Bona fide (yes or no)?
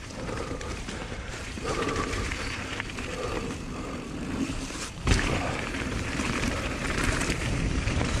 no